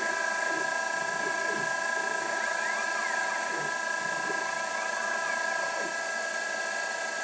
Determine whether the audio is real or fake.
fake